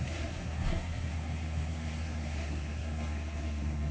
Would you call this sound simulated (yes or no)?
yes